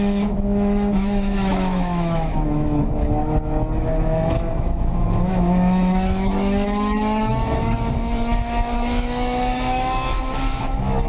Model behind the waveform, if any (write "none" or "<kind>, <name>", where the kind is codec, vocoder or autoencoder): autoencoder, DAC-VAE